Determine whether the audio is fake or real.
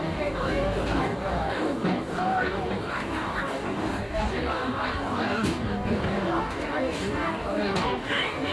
fake